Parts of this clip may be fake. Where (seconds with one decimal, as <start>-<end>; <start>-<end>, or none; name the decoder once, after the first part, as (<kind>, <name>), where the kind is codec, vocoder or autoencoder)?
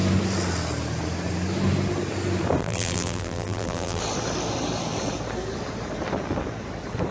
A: 2.6-4.0 (vocoder, BigVGAN v2)